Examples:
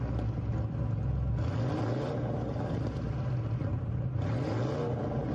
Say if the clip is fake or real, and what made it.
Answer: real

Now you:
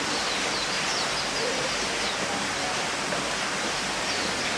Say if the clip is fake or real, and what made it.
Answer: real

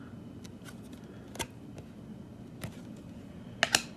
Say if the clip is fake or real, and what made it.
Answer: real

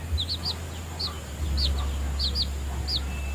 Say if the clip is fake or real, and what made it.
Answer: real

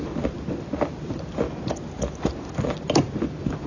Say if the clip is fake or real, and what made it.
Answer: real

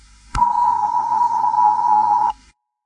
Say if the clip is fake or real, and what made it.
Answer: fake, codec, SNAC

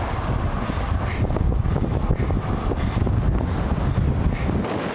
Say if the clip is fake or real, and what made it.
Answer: real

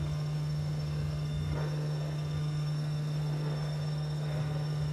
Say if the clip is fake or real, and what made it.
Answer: fake, codec, SNAC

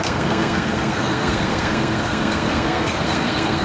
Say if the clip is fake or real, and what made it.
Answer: fake, codec, SNAC